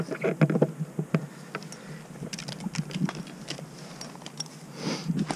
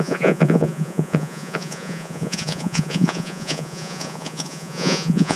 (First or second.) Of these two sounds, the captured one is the first